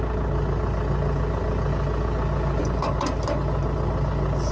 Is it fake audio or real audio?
real